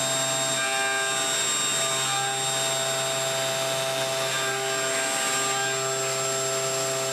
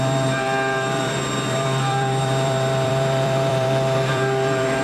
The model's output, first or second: second